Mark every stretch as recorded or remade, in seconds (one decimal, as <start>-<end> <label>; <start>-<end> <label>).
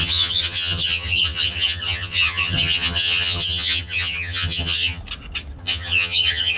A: 0.0-5.0 remade; 5.0-5.6 recorded; 5.6-6.6 remade